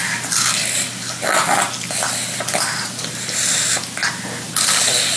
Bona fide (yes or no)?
yes